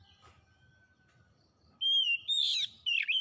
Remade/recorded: recorded